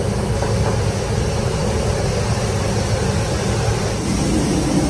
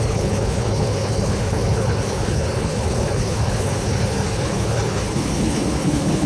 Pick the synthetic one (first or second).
second